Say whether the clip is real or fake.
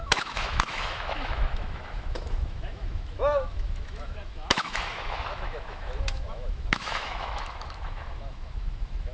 fake